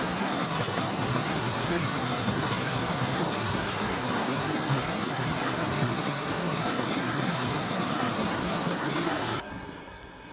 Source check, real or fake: fake